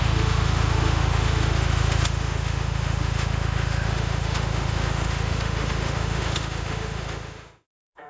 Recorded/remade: remade